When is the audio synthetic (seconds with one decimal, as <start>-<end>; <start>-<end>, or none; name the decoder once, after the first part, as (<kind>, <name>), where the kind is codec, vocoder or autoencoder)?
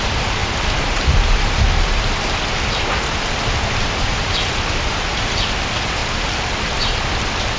0.4-4.7 (vocoder, BigVGAN v2); 6.0-7.0